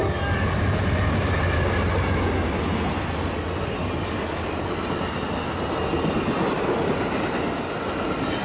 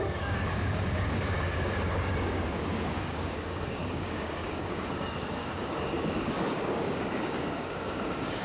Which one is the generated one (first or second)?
second